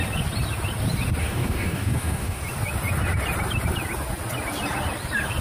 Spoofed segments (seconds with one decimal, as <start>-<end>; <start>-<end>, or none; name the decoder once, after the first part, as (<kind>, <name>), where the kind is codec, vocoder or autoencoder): 1.2-2.4 (codec, DAC)